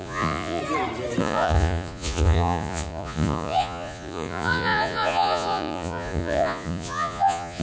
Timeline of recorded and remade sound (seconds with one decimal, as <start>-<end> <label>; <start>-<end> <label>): 0.0-0.6 remade; 0.6-1.2 recorded; 1.2-7.6 remade